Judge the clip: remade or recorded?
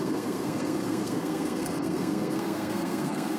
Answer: remade